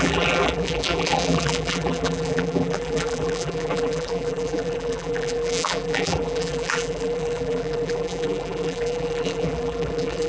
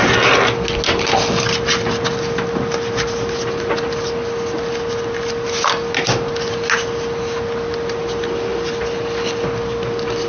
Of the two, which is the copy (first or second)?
first